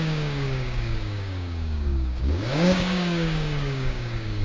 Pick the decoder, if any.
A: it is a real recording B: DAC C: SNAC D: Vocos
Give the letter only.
B